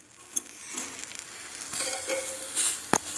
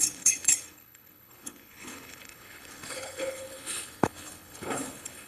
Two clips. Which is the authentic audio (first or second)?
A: first